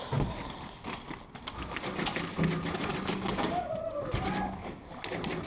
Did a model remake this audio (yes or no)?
no